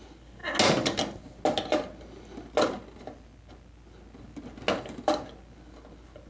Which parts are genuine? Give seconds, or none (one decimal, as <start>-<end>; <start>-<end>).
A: 0.0-6.3